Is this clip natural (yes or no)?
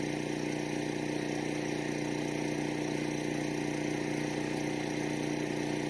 yes